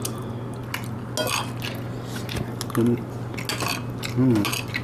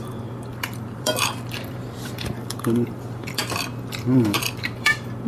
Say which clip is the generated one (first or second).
second